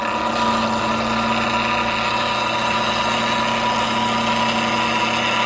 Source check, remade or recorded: recorded